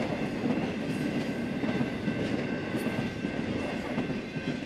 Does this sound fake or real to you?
real